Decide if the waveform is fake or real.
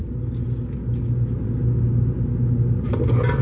real